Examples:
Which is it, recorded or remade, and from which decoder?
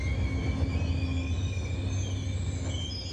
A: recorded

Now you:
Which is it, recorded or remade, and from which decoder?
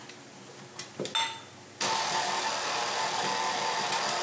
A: recorded